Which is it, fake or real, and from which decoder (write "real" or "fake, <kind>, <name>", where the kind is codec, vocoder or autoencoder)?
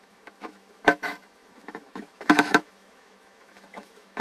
fake, autoencoder, DAC-VAE